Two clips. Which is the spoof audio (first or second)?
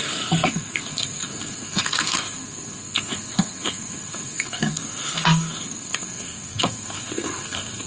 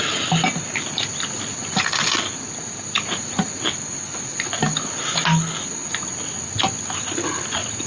first